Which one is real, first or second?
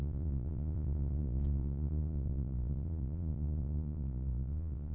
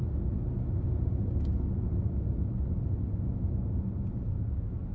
second